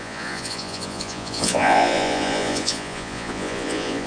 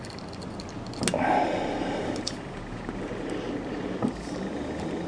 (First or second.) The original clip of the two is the second